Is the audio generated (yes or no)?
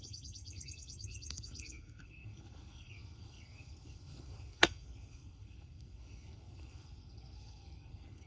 yes